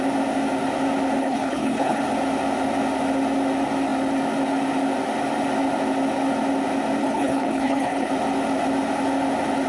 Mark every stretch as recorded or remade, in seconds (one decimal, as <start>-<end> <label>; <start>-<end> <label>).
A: 0.0-1.2 recorded; 1.2-2.0 remade; 2.0-7.0 recorded; 7.0-8.1 remade; 8.1-9.7 recorded